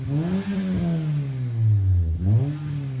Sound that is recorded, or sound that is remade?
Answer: recorded